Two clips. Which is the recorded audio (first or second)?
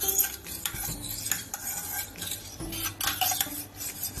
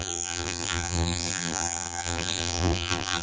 first